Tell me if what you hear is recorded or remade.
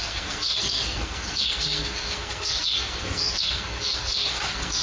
remade